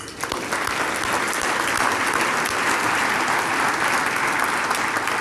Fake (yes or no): no